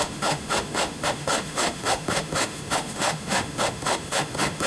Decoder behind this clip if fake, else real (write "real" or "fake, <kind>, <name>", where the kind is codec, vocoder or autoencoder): fake, autoencoder, DAC-VAE